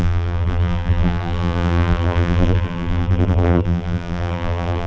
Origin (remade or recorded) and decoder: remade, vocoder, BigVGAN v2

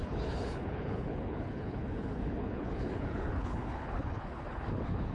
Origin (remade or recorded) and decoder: remade, codec, HILCodec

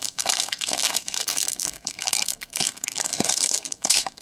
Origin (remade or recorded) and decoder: remade, codec, SNAC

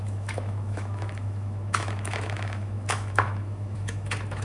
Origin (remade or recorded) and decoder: remade, autoencoder, DAC-VAE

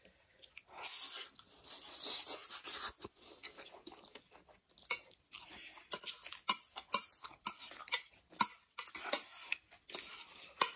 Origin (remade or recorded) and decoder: recorded